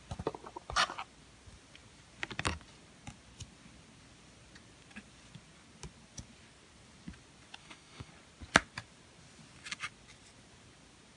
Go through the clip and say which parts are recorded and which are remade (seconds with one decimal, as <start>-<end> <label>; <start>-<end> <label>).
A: 0.0-7.6 recorded; 7.6-8.1 remade; 8.1-11.2 recorded